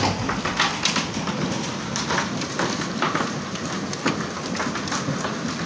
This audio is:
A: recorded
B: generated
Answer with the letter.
A